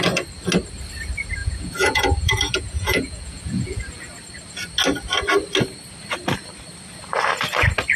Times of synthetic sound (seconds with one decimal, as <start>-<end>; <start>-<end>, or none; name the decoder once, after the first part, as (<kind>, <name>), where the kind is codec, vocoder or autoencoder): 1.4-3.8 (vocoder, Vocos)